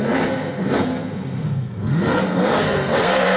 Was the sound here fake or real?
fake